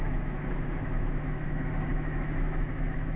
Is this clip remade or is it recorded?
remade